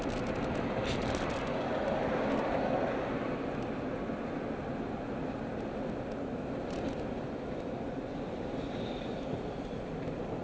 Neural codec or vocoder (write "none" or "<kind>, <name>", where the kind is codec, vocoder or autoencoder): none